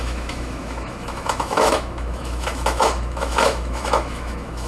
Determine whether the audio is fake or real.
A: fake